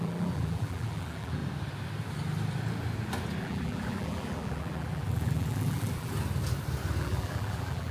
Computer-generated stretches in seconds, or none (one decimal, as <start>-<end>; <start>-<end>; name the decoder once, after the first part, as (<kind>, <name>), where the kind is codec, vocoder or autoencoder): 0.0-1.4 (vocoder, BigVGAN v2); 3.4-6.1; 7.0-7.9